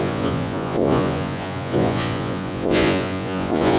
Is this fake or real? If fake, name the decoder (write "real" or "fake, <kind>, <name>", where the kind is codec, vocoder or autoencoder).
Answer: fake, vocoder, Vocos